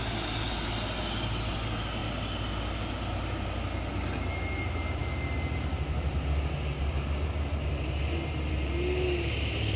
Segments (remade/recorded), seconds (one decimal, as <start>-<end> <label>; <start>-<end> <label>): 0.0-9.8 recorded